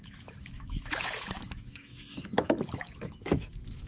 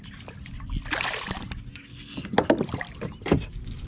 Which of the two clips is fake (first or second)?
first